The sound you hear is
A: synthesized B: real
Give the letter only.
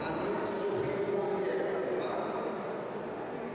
B